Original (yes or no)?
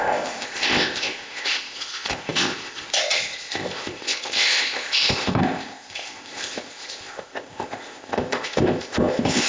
no